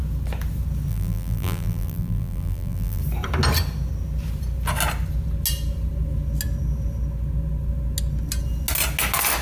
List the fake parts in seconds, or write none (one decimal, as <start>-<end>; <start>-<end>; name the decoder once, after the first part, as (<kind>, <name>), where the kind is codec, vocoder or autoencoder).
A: 0.9-3.0 (vocoder, BigVGAN v2)

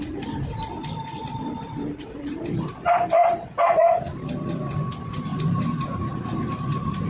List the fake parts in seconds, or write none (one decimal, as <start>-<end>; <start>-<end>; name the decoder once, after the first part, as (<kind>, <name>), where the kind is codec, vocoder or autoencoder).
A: 0.0-3.2 (vocoder, BigVGAN v2); 4.5-5.3; 6.1-7.1

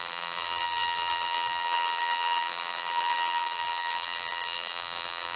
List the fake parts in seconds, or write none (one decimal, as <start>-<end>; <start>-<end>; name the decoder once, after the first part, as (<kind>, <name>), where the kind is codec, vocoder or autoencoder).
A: 0.0-5.4 (vocoder, BigVGAN v2)

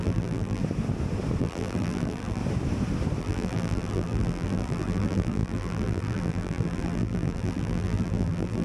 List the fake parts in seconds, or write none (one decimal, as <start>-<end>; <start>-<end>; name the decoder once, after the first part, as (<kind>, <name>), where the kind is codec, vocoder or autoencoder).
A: 0.0-0.6 (vocoder, BigVGAN v2); 1.4-2.4; 3.2-8.6

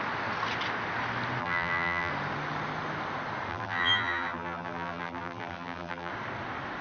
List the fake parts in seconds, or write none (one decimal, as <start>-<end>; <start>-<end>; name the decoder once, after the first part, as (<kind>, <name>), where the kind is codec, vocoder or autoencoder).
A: 1.4-2.1 (vocoder, BigVGAN v2); 3.5-6.1

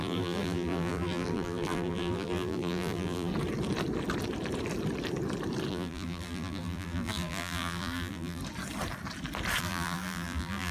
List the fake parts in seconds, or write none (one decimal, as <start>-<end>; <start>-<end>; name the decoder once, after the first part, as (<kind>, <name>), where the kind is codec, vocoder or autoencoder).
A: 0.0-3.3 (vocoder, BigVGAN v2); 5.7-8.4; 9.6-10.7

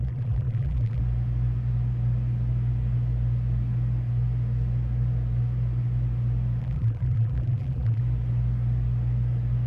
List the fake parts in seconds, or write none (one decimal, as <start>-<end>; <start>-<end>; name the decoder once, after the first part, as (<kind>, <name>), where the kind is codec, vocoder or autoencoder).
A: 0.0-1.0 (vocoder, BigVGAN v2); 6.6-8.0

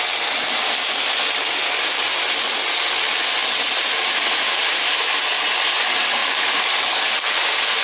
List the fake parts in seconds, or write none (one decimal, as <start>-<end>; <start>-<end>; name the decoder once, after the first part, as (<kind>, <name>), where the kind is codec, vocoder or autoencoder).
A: 4.6-5.2 (vocoder, BigVGAN v2); 6.2-7.0